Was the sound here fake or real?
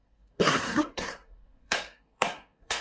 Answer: fake